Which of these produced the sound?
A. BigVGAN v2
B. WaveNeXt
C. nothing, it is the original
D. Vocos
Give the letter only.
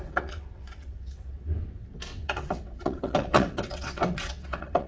B